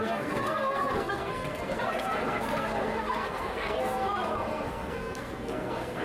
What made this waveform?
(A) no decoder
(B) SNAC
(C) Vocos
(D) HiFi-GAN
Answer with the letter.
B